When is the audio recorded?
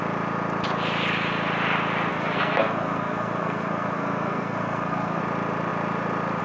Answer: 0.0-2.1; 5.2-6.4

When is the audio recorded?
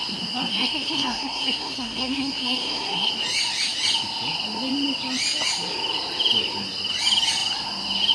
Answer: 0.0-0.5; 3.1-8.1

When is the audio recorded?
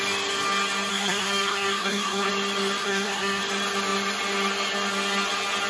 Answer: 0.0-0.9; 2.3-2.8; 3.4-5.7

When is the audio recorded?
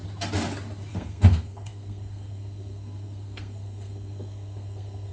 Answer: 0.0-0.9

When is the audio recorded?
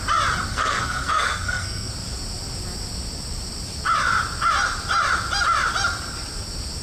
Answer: 0.0-0.5; 1.9-6.8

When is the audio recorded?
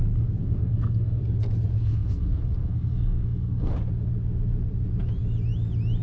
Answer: 0.0-0.4; 1.2-1.8; 3.7-6.0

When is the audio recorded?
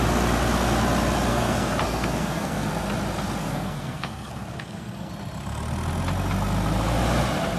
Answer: 0.0-1.3; 2.7-3.4; 5.1-7.6